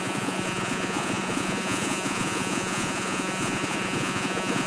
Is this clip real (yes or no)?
no